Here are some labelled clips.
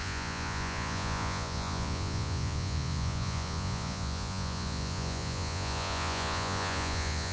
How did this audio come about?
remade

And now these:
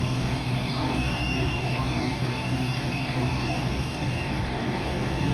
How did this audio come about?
remade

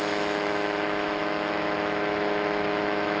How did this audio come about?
remade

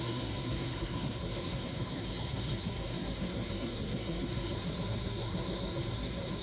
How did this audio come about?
remade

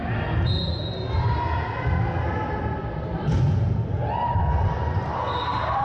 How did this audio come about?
recorded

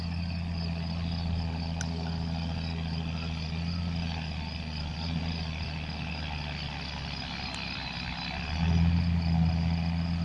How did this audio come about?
recorded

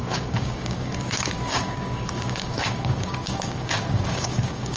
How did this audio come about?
remade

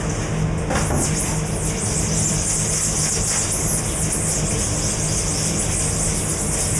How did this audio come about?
recorded